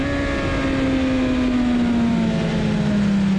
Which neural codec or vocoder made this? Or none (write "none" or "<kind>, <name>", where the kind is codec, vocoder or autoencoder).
none